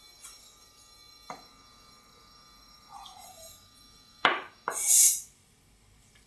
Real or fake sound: real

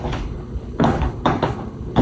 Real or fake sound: fake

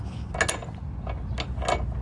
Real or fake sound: real